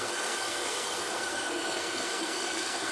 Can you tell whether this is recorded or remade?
remade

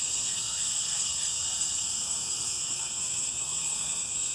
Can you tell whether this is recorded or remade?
remade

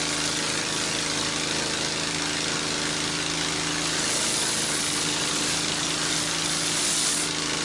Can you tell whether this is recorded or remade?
recorded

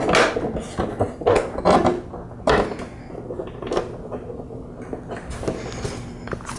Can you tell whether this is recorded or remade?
recorded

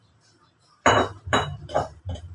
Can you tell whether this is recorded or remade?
remade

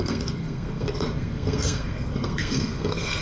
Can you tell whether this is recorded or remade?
remade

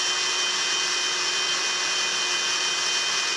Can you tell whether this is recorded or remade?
recorded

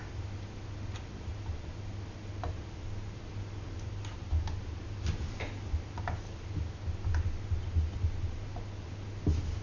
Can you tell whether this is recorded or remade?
recorded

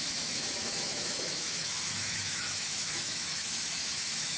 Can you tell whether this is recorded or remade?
remade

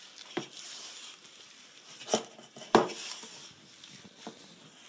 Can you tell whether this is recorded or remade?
recorded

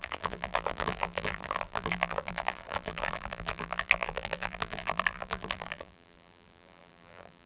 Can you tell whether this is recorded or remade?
remade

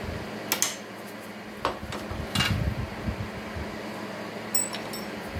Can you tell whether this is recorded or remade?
recorded